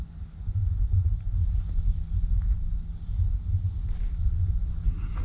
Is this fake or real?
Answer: real